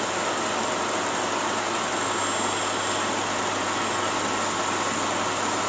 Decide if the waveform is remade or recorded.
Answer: recorded